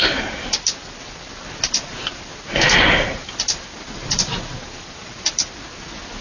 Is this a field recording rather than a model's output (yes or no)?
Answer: yes